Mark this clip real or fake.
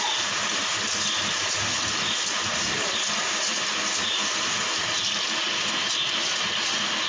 real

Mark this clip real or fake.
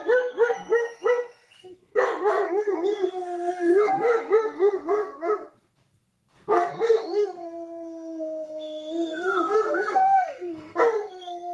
fake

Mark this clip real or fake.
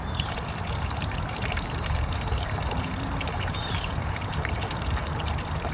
fake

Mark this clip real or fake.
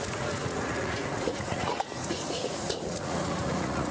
fake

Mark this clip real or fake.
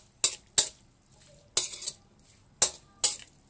real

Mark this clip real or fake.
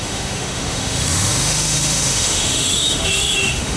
fake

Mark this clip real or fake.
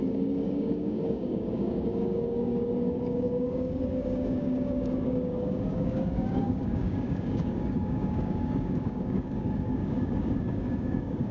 fake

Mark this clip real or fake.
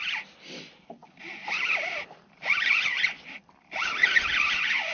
real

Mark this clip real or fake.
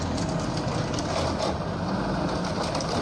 real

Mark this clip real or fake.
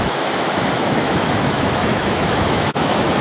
fake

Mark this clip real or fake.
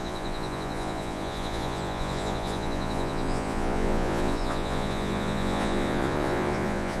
fake